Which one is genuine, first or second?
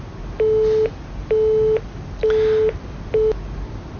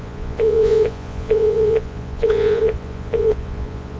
first